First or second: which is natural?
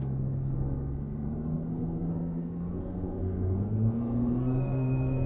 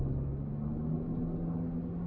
second